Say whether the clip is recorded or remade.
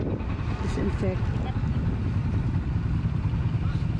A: recorded